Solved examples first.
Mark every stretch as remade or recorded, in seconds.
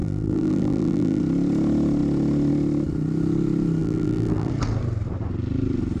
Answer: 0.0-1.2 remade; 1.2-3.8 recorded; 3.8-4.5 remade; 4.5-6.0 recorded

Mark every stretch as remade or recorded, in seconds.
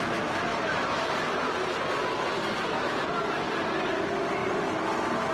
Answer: 0.0-0.5 recorded; 0.5-3.7 remade; 3.7-5.3 recorded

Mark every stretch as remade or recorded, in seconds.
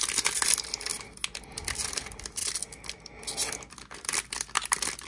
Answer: 0.0-5.1 recorded